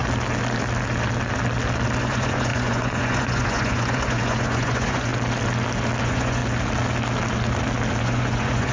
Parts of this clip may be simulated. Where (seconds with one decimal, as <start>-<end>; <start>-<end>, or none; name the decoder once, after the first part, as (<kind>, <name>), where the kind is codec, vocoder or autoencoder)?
2.0-5.1 (vocoder, Vocos); 6.0-6.4; 8.0-8.7